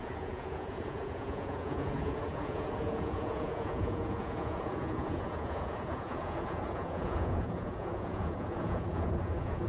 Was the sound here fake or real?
fake